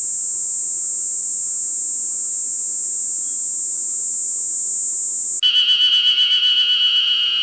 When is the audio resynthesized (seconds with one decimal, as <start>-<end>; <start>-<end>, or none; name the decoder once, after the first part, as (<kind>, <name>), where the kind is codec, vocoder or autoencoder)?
none